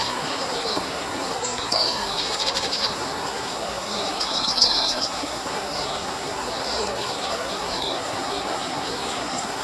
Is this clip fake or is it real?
fake